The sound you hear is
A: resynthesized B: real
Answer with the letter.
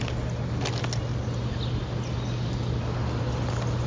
B